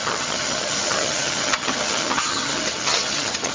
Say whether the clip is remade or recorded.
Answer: remade